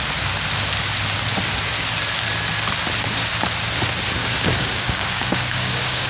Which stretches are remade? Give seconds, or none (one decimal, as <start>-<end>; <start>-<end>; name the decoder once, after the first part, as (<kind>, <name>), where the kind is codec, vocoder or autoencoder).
4.2-6.1 (codec, DAC)